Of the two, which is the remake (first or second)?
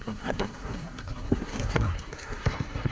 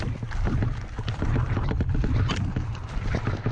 first